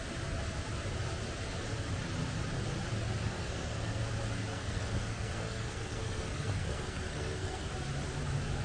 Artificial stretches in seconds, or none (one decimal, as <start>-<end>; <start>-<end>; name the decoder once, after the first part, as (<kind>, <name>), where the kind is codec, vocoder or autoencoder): 3.2-4.1 (codec, SNAC); 4.5-7.7